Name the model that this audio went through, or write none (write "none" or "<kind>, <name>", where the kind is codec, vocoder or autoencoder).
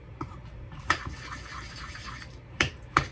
vocoder, BigVGAN v2